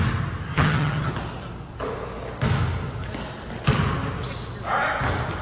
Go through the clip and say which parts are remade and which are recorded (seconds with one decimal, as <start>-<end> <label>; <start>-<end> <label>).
0.0-0.5 recorded; 0.5-1.1 remade; 1.1-5.4 recorded